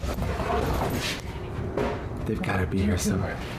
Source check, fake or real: real